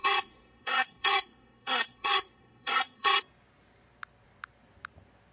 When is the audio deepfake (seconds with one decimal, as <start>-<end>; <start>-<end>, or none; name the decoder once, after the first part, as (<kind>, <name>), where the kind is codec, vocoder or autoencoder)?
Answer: 0.0-3.2 (codec, SNAC)

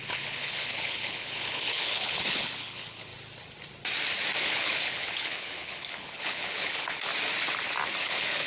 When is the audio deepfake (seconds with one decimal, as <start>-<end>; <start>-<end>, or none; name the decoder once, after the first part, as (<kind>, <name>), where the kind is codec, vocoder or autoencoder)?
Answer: 0.0-3.1 (codec, HILCodec); 4.4-7.1; 8.0-8.5

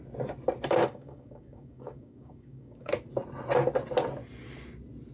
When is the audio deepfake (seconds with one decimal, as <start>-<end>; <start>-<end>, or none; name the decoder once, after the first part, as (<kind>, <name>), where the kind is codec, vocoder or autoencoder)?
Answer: 0.8-2.9 (codec, DAC)